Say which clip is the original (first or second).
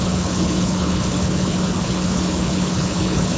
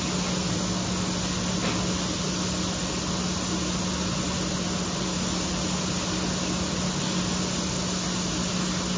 second